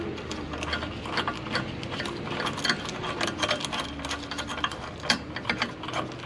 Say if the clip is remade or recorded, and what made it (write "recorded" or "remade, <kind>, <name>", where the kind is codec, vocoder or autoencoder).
recorded